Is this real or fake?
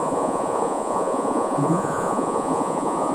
fake